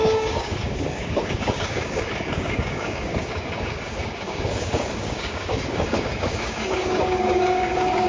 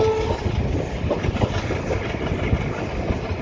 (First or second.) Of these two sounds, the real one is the second